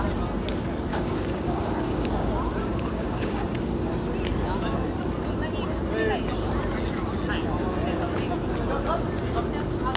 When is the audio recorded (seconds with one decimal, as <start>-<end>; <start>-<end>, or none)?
0.0-0.9; 2.3-2.7; 3.4-10.0